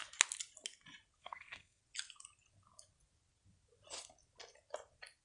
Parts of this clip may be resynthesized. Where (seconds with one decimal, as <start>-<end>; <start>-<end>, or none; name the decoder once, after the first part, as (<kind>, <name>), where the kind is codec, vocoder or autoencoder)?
1.2-1.8 (codec, SNAC)